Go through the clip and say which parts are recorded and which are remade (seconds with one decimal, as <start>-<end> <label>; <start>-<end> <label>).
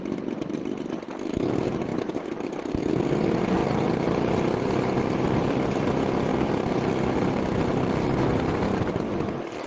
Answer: 0.0-3.6 remade; 3.6-4.7 recorded; 4.7-9.7 remade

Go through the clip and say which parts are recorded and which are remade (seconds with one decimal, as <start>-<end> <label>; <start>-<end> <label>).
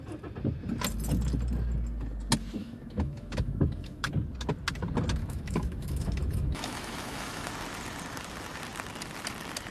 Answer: 0.0-2.6 recorded; 2.6-4.1 remade; 4.1-5.2 recorded; 5.2-7.5 remade; 7.5-9.7 recorded